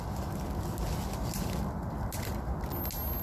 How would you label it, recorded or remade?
recorded